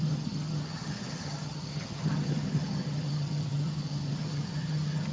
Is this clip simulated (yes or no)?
yes